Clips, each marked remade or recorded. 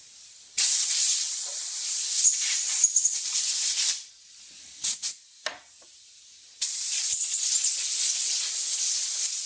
recorded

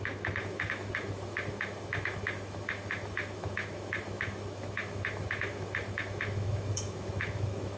remade